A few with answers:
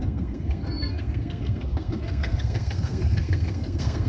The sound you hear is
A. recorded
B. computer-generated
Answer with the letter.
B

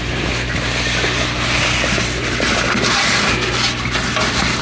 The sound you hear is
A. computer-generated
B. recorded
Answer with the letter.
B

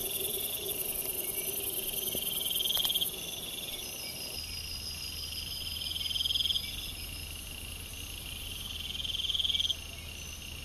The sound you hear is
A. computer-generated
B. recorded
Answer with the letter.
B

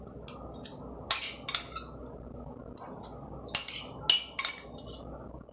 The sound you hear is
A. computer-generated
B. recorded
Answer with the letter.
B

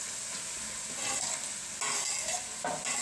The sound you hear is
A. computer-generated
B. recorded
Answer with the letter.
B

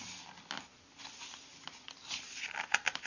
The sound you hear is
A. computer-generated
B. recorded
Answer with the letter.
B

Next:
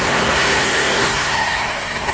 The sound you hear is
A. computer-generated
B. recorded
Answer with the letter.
A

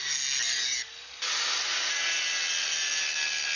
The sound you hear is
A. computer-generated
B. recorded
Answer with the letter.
B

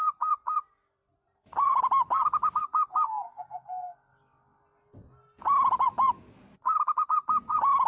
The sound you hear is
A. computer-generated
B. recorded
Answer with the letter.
B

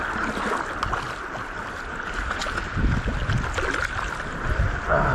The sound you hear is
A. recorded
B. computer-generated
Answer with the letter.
A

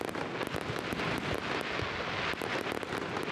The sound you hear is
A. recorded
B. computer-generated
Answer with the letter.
A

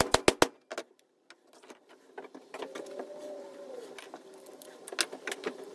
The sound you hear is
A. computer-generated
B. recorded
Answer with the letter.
B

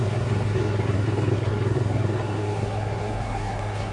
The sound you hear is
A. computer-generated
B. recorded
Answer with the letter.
A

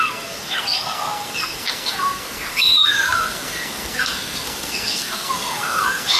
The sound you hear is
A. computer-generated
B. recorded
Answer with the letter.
A